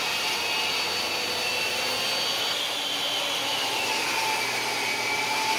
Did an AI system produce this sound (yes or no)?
no